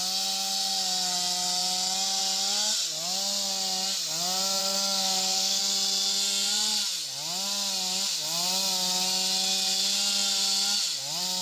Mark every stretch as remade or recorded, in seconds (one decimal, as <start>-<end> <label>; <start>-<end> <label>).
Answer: 0.0-4.6 recorded; 4.6-5.6 remade; 5.6-11.4 recorded